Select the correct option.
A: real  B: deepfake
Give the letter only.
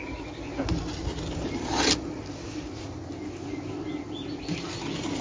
A